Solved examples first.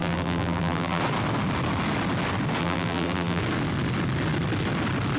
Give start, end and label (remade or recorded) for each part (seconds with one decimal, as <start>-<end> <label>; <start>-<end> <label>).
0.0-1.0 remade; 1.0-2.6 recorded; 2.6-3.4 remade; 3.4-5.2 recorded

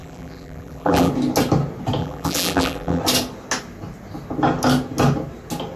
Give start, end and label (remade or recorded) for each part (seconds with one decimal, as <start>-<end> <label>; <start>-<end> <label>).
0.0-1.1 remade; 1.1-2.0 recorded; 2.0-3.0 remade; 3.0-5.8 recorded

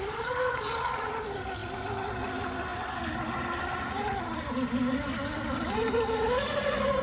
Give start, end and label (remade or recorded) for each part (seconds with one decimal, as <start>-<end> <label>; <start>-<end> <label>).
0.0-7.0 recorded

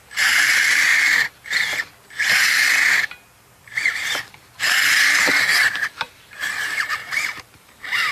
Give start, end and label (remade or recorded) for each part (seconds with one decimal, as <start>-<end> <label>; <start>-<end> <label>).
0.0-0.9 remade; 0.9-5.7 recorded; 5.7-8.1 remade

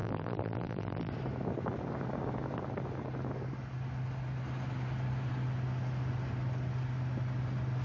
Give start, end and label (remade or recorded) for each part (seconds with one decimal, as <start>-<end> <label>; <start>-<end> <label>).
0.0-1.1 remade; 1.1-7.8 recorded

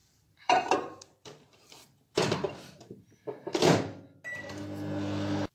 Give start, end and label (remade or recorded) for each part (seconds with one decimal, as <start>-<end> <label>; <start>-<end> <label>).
0.0-3.0 remade; 3.0-5.5 recorded

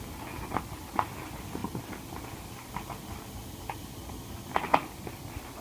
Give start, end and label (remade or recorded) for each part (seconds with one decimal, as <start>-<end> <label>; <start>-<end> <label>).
0.0-5.6 recorded